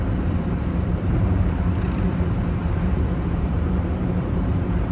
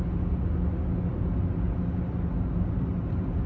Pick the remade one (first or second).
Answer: first